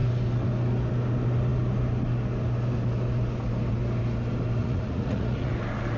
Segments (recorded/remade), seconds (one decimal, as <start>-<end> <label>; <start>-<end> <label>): 0.0-4.6 recorded; 4.6-5.5 remade; 5.5-6.0 recorded